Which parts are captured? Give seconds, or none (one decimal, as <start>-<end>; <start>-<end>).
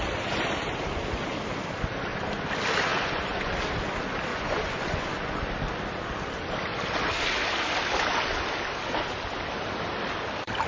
0.0-2.9; 3.5-4.3; 5.4-10.7